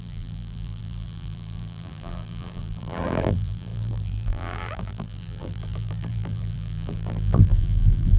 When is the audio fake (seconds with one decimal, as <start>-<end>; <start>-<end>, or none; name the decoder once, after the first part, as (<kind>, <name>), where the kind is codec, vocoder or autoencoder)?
0.0-8.2 (vocoder, BigVGAN v2)